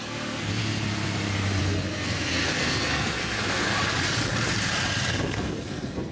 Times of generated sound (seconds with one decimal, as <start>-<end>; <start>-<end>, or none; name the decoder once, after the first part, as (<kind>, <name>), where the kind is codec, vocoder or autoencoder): 0.0-0.6 (codec, SNAC); 1.6-3.7; 5.1-6.1